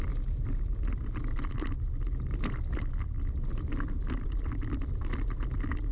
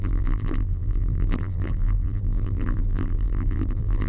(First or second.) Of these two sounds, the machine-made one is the second